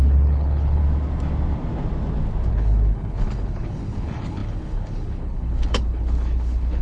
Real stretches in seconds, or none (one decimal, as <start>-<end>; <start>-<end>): 0.8-2.5